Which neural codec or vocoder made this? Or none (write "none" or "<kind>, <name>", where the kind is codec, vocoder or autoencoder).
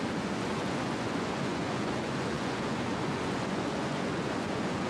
vocoder, Vocos